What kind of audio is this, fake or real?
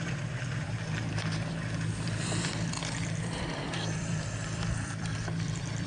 fake